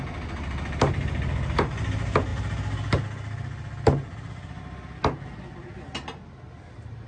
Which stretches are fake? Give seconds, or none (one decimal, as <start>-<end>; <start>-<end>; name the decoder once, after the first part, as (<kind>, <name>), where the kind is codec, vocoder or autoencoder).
none

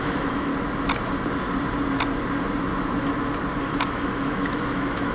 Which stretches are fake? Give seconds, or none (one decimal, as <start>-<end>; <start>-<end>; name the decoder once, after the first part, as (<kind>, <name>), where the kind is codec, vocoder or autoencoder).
0.0-0.5 (autoencoder, DAC-VAE); 3.6-5.1